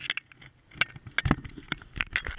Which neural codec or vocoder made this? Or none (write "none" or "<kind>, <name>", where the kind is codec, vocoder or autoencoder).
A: none